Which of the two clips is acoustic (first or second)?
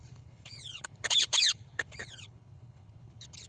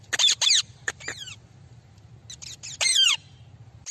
second